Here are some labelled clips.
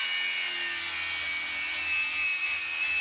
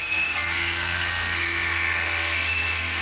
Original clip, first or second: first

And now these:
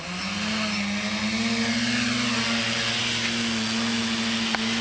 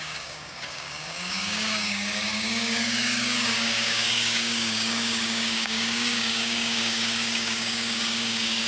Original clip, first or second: first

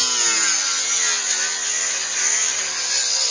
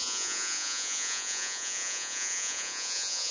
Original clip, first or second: first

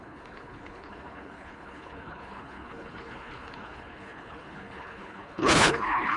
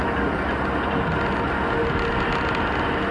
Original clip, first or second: second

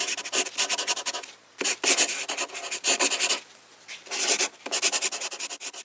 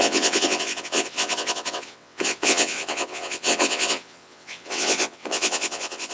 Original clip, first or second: first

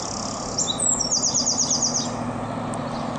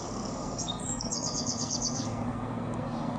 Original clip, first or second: first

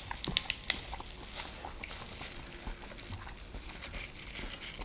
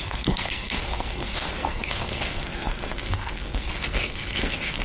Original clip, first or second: first